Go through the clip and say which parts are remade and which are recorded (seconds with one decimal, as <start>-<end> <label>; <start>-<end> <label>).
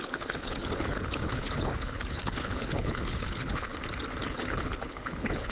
0.0-3.7 remade; 3.7-4.3 recorded; 4.3-5.5 remade